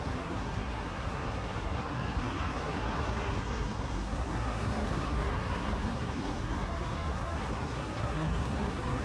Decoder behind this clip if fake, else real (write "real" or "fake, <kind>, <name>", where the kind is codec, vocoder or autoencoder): fake, codec, SNAC